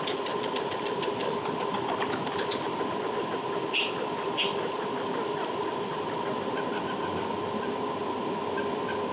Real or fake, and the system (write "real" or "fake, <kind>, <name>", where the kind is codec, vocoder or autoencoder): real